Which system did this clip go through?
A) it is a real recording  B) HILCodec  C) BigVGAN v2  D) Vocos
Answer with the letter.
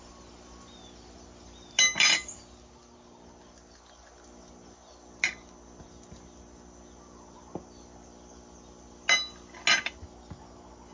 A